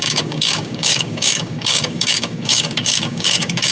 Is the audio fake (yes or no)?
yes